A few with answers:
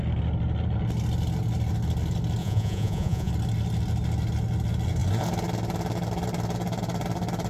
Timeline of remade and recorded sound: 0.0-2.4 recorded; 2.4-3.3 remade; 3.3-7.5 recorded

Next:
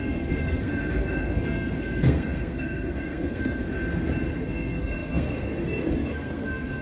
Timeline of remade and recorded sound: 0.0-3.8 remade; 3.8-4.4 recorded; 4.4-6.8 remade

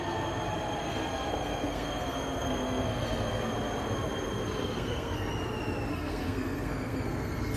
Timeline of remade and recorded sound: 0.0-0.8 recorded; 0.8-3.4 remade; 3.4-4.6 recorded; 4.6-5.3 remade; 5.3-5.9 recorded; 5.9-7.6 remade

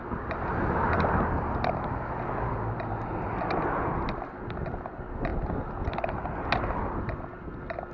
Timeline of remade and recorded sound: 0.0-7.9 recorded

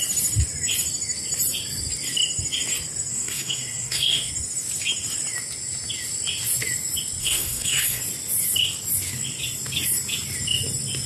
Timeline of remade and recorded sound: 0.0-3.1 recorded; 3.1-4.3 remade; 4.3-7.2 recorded; 7.2-8.0 remade; 8.0-11.1 recorded

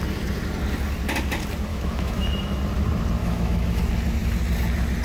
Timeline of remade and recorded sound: 0.0-1.7 recorded; 1.7-2.6 remade; 2.6-3.2 recorded; 3.2-3.8 remade; 3.8-5.0 recorded

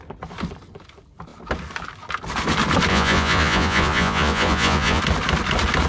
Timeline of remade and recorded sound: 0.0-2.9 recorded; 2.9-5.0 remade; 5.0-5.9 recorded

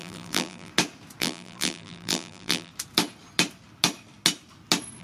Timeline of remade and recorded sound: 0.0-0.7 remade; 0.7-1.2 recorded; 1.2-2.7 remade; 2.7-5.0 recorded